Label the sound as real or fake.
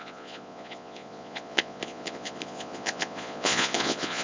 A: fake